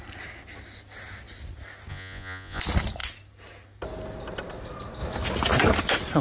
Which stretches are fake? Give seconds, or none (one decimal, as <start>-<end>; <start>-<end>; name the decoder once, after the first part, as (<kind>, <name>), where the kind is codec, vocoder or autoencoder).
1.9-2.6 (vocoder, Vocos)